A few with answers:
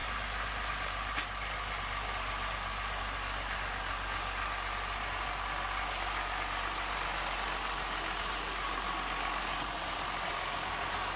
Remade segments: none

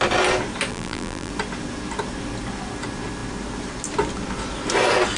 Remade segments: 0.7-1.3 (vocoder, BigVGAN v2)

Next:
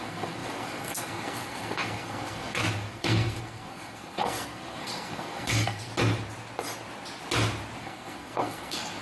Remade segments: 0.0-5.9 (codec, SNAC); 7.8-9.0

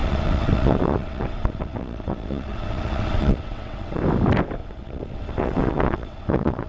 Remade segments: 0.0-4.0 (vocoder, WaveNeXt); 4.6-6.7